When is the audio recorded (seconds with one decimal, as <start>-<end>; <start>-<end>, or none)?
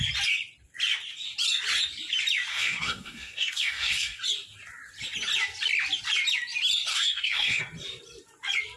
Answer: 0.0-2.5; 4.2-6.9; 7.6-8.8